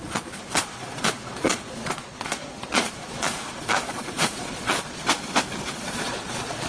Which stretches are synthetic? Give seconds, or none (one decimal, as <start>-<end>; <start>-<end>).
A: 0.0-5.0; 5.8-6.7